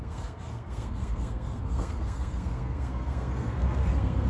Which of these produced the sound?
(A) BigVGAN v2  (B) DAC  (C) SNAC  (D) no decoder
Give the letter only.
C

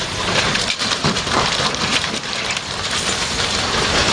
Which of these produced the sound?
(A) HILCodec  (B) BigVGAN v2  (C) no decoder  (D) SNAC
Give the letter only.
B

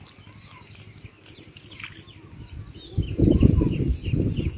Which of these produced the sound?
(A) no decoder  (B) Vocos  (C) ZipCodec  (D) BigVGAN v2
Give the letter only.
A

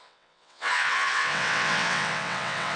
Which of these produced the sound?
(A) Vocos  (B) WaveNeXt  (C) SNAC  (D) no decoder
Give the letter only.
B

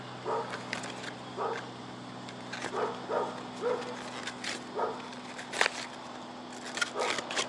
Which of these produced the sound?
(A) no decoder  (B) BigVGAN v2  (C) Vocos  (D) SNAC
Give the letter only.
A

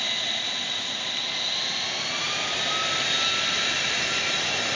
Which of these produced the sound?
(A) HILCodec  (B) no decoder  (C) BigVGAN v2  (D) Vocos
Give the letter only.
B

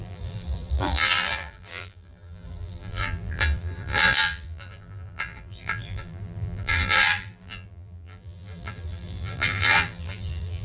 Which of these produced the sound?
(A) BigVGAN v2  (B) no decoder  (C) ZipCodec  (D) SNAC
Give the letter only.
A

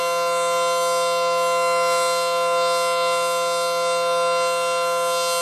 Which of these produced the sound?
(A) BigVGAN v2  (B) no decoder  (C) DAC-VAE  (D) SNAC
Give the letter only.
B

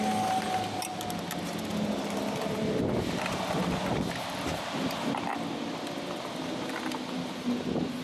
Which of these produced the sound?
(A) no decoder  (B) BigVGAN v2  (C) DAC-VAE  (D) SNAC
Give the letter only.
A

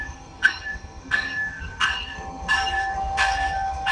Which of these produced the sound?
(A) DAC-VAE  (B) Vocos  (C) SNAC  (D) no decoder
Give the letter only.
C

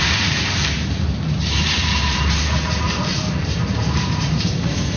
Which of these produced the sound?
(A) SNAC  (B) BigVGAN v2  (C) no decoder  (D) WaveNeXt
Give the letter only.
B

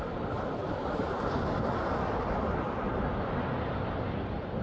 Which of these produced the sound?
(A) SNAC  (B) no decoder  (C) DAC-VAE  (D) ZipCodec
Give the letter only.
B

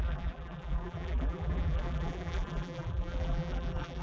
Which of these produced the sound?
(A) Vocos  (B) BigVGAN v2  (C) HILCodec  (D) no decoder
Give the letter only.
B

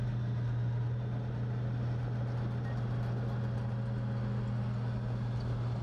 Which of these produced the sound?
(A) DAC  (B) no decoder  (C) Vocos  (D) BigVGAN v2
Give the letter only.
B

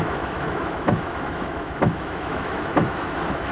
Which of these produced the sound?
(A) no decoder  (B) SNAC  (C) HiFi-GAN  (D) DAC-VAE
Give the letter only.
D